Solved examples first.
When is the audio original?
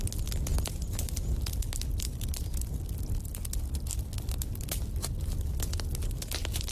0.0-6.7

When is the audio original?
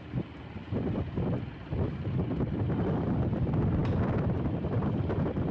0.0-5.5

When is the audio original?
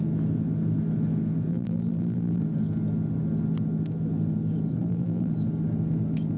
0.0-1.5; 2.4-4.8; 5.3-6.4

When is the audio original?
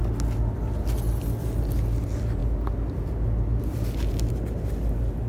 0.0-5.3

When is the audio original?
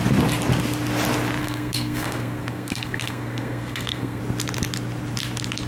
0.0-1.4; 4.2-5.7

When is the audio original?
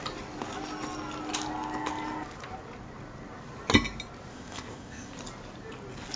0.0-4.3; 5.1-6.2